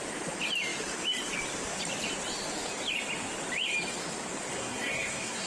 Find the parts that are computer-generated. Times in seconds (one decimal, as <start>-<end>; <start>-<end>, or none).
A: 4.5-5.5